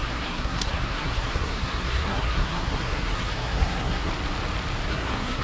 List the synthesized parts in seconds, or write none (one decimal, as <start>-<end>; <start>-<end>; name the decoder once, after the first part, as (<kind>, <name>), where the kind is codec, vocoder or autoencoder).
0.0-4.1 (codec, SNAC); 4.9-5.4